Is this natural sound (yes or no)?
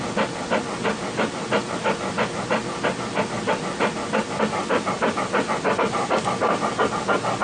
yes